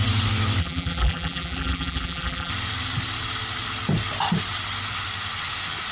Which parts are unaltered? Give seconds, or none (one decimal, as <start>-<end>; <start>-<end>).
0.0-0.6; 2.5-5.9